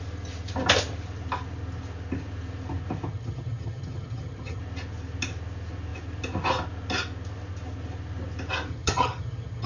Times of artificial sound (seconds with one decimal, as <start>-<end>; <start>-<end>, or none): 3.1-4.6; 8.7-9.7